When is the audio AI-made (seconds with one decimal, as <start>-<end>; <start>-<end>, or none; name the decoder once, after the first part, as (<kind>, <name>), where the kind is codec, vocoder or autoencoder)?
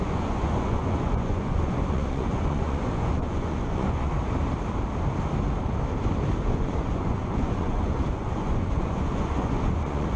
0.0-4.1 (vocoder, Vocos); 6.5-10.2